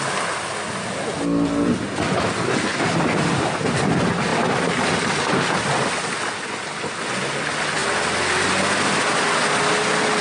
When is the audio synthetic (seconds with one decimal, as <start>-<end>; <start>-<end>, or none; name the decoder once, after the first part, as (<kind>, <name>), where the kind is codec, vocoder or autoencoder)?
none